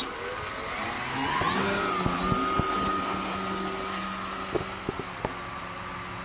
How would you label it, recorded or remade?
recorded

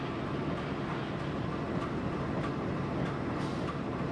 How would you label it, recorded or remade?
recorded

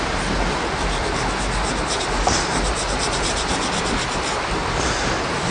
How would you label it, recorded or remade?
recorded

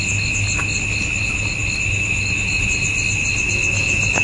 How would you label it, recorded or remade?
recorded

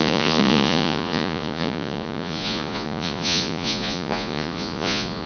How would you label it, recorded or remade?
remade